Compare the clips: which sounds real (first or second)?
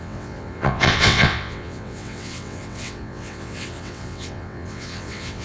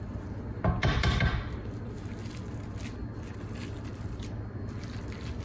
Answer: second